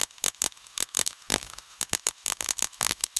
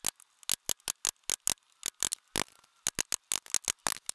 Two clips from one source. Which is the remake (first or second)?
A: first